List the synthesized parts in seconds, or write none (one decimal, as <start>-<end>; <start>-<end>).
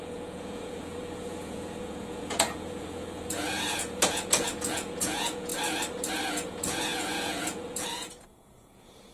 0.0-5.5; 6.3-9.1